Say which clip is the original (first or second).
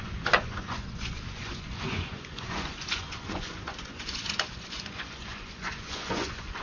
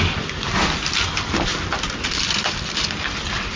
second